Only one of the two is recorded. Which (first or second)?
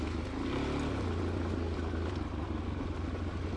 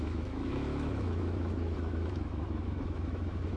first